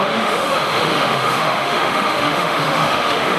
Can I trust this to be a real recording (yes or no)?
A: no